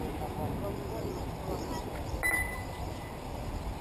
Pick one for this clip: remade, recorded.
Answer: recorded